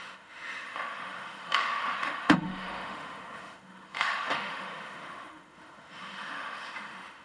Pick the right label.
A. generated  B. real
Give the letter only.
A